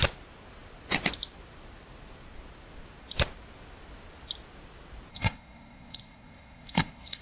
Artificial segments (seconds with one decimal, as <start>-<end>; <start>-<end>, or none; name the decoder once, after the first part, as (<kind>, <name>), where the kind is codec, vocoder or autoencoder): 5.1-7.2 (codec, SNAC)